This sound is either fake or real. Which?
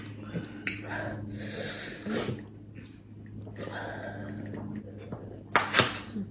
real